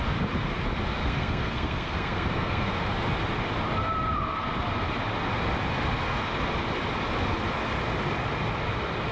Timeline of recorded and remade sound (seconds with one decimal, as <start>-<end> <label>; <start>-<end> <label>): 0.0-1.0 recorded; 1.0-2.7 remade; 2.7-9.1 recorded